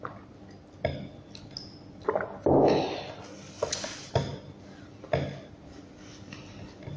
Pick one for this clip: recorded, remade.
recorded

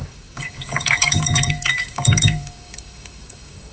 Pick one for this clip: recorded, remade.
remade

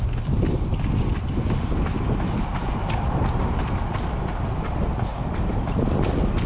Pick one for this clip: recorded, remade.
recorded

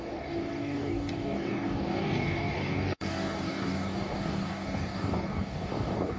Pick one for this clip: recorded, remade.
remade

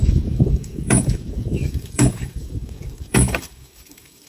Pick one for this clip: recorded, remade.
remade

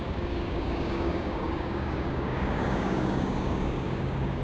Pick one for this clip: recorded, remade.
remade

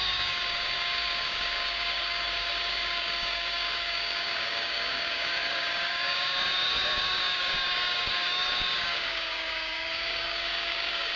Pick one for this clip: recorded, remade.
remade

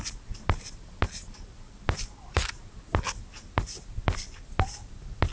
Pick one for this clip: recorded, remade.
recorded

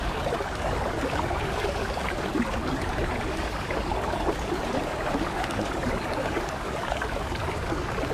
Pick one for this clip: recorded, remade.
remade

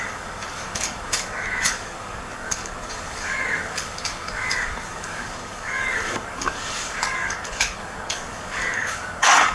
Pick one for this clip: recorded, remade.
remade